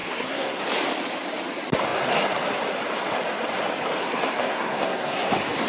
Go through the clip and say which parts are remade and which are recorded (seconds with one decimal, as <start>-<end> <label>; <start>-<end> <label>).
0.0-0.6 remade; 0.6-4.0 recorded; 4.0-5.3 remade; 5.3-5.7 recorded